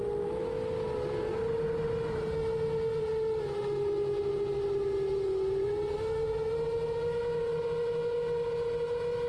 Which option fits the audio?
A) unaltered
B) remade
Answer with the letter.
A